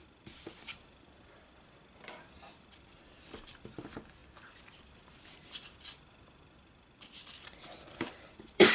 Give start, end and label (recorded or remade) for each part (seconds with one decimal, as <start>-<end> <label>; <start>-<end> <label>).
0.0-8.7 remade